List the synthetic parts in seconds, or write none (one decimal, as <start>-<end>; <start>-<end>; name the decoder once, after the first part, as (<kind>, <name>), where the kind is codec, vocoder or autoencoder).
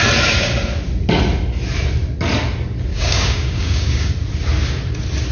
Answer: 2.9-4.1 (codec, DAC)